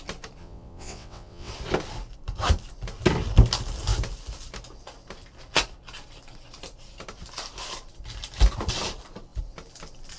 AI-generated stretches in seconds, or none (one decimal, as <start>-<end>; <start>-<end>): 0.4-1.5